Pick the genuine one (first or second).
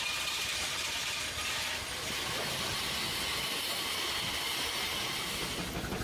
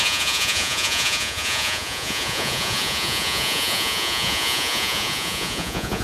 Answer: first